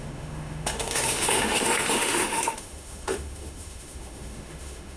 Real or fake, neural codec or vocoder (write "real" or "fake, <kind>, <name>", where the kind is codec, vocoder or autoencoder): fake, autoencoder, DAC-VAE